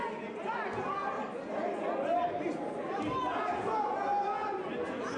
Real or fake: real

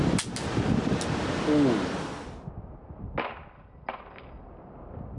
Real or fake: real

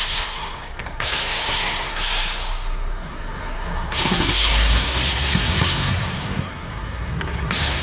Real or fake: fake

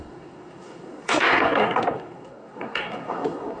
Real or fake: fake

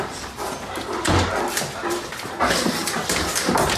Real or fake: real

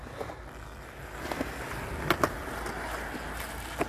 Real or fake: real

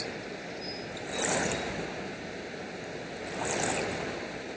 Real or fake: real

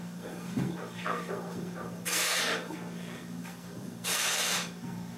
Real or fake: fake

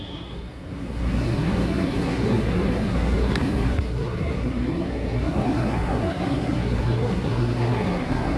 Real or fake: fake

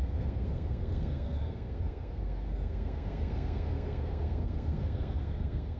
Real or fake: fake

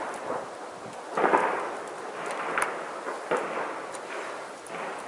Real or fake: real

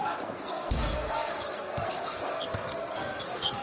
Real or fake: fake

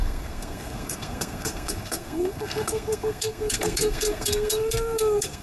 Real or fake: fake